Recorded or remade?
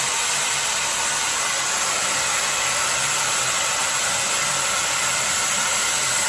remade